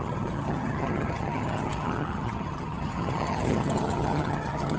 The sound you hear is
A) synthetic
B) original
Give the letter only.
A